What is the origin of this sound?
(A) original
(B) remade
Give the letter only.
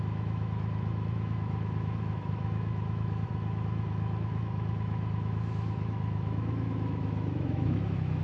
B